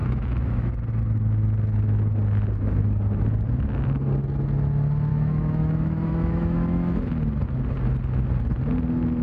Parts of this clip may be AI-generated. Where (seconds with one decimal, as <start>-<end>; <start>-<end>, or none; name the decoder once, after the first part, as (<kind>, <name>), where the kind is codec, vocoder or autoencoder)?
0.0-0.7 (autoencoder, DAC-VAE); 5.1-7.0